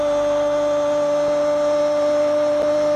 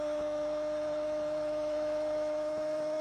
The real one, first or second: first